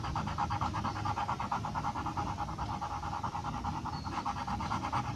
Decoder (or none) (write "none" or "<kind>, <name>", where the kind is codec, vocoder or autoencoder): none